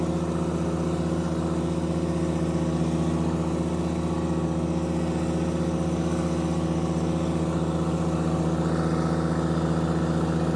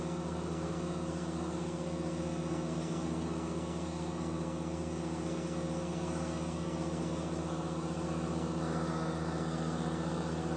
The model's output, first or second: second